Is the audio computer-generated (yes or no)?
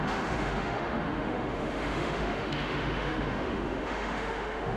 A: yes